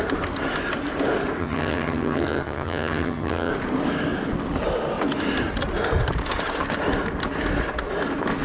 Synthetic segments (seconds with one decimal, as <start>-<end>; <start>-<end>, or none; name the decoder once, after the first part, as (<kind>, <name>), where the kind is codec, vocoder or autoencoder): 1.4-3.5 (vocoder, HiFi-GAN)